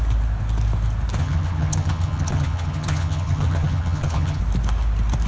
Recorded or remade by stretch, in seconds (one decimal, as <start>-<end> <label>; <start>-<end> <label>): 0.0-1.2 recorded; 1.2-4.4 remade; 4.4-5.3 recorded